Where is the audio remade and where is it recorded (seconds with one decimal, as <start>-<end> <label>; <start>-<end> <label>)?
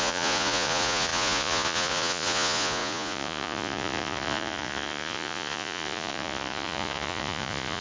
0.0-7.8 remade